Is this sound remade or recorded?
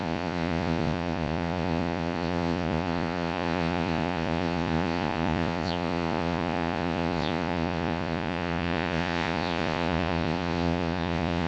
remade